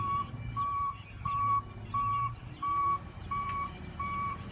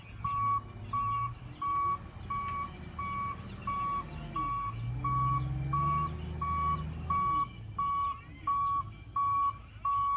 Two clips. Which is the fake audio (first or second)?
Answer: first